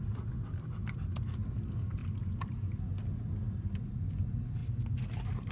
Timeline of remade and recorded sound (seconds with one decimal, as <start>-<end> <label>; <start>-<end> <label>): 0.0-5.5 recorded